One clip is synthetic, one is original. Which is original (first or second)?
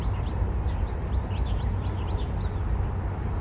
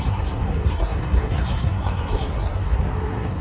first